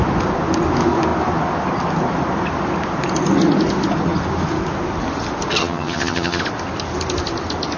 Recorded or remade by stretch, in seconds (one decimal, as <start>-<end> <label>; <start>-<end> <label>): 0.0-5.6 recorded; 5.6-6.4 remade; 6.4-7.8 recorded